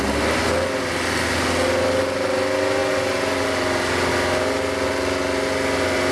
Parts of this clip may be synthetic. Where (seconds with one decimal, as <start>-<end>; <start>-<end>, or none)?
none